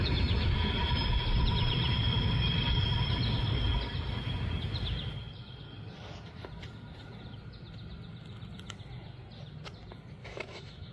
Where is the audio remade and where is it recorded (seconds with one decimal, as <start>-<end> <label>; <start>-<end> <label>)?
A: 0.0-10.2 recorded; 10.2-10.9 remade